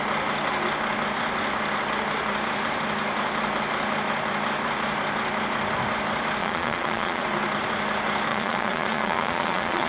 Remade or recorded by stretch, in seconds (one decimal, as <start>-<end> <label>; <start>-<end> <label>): 0.0-6.4 recorded; 6.4-7.2 remade; 7.2-8.3 recorded; 8.3-9.9 remade